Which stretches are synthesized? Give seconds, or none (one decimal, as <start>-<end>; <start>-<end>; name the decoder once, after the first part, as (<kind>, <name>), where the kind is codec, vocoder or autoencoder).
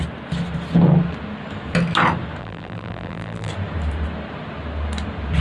2.4-3.5 (vocoder, BigVGAN v2)